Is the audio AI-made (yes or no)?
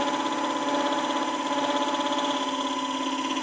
no